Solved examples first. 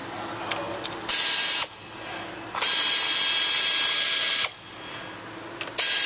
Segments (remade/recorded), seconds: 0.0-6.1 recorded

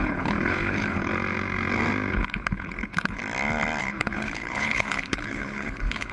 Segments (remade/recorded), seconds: 0.0-1.1 remade; 1.1-2.1 recorded; 2.1-3.2 remade; 3.2-3.8 recorded; 3.8-6.1 remade

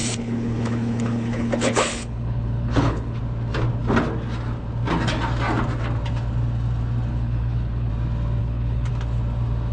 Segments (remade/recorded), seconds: 0.0-3.2 remade; 3.2-7.1 recorded; 7.1-7.9 remade; 7.9-8.4 recorded; 8.4-8.9 remade; 8.9-9.7 recorded

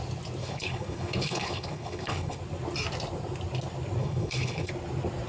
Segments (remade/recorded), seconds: 0.0-0.4 recorded; 0.4-2.4 remade; 2.4-4.0 recorded; 4.0-4.7 remade; 4.7-5.3 recorded

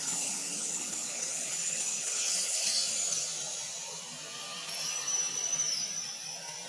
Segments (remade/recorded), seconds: 0.0-2.7 remade; 2.7-6.7 recorded

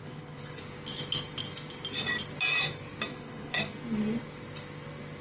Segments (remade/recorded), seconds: 0.0-0.6 remade; 0.6-3.1 recorded; 3.1-3.6 remade; 3.6-5.2 recorded

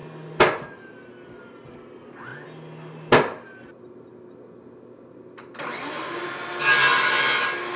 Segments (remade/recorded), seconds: 0.0-7.8 recorded